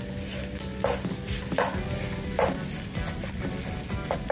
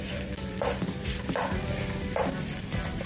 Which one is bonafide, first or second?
first